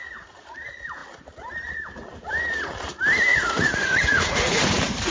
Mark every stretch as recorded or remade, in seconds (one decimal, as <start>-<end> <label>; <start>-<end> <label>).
0.0-3.3 recorded; 3.3-4.6 remade; 4.6-5.1 recorded